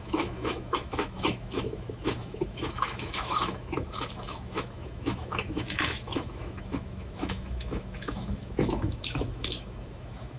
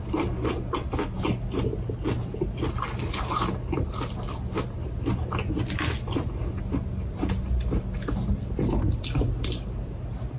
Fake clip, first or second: first